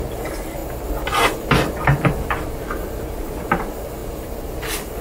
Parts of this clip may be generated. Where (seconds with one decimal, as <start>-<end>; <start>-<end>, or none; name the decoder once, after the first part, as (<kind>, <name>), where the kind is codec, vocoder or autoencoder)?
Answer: 4.0-4.6 (vocoder, BigVGAN v2)